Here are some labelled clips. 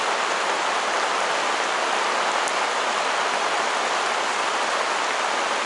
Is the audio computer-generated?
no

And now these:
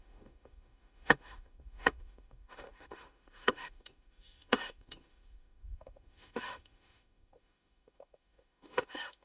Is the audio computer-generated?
yes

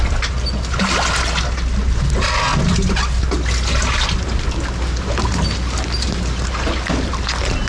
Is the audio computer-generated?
no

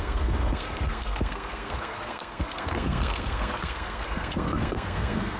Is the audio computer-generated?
yes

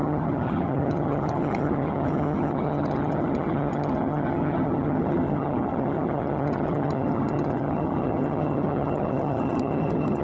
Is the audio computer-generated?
yes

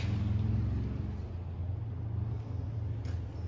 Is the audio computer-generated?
no